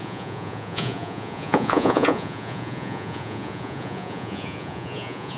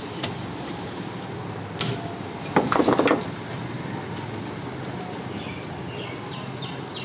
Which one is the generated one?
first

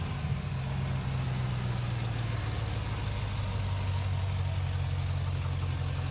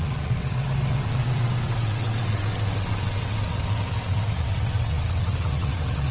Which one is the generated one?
second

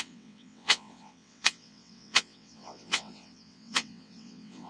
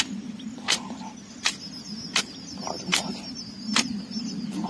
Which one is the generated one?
first